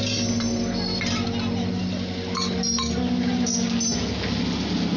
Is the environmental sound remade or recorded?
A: recorded